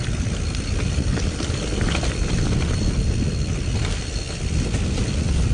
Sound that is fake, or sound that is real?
real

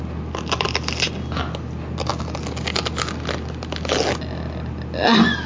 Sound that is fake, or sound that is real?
real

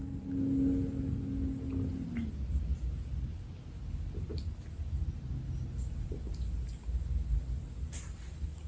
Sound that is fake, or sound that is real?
real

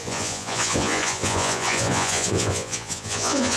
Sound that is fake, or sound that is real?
fake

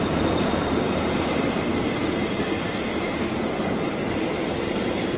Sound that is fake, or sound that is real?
fake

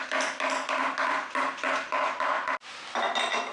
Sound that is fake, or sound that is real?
real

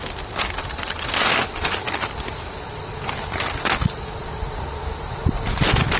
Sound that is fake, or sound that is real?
real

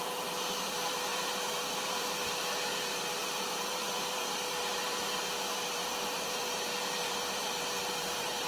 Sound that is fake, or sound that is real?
fake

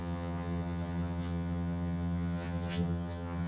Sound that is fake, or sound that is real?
fake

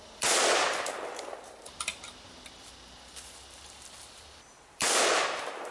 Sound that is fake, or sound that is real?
fake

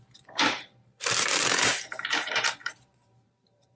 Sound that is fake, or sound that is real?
fake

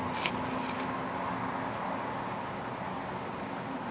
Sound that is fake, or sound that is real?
real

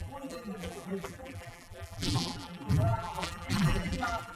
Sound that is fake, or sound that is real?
fake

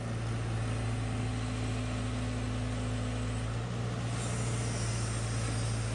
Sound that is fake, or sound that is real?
real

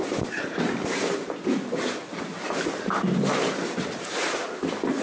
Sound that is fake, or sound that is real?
real